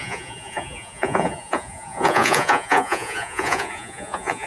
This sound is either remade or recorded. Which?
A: remade